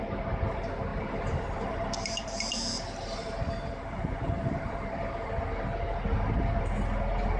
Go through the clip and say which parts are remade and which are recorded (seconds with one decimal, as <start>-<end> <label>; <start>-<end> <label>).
0.0-0.9 recorded; 0.9-5.3 remade; 5.3-7.4 recorded